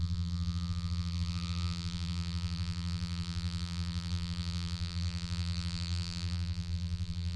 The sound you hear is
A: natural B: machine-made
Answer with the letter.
B